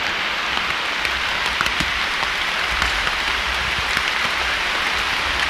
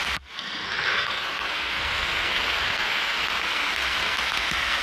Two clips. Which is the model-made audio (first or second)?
second